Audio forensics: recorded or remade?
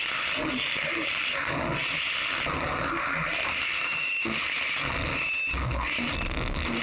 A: recorded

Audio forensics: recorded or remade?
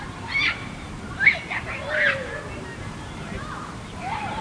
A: remade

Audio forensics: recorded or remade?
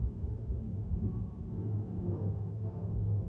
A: remade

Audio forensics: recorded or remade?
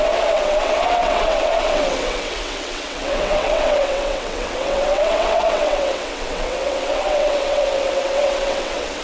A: remade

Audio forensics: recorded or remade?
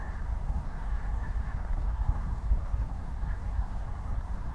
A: remade